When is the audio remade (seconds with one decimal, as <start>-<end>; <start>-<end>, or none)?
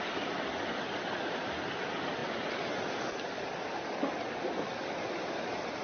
none